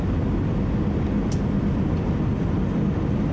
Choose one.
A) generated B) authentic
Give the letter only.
B